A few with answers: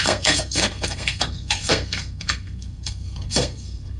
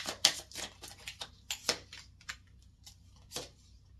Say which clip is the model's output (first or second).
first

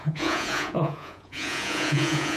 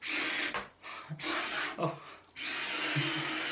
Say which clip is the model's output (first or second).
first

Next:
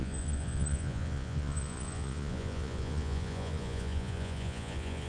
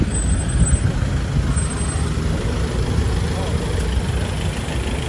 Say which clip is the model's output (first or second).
first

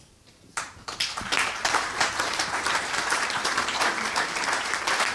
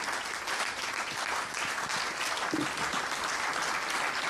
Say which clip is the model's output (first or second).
first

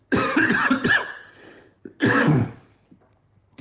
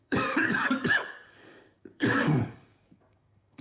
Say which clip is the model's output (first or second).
second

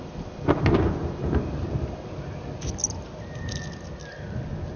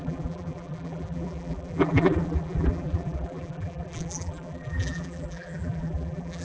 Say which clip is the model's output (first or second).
second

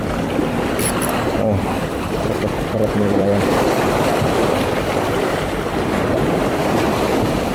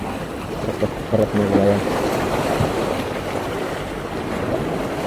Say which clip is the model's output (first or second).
first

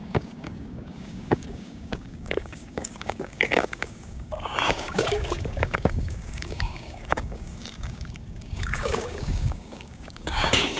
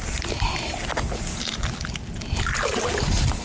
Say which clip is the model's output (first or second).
first